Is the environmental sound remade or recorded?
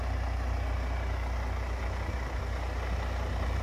recorded